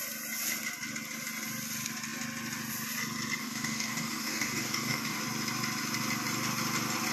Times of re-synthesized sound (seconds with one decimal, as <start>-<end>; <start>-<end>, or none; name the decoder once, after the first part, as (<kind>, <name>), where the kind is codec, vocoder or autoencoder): 3.4-5.2 (codec, DAC)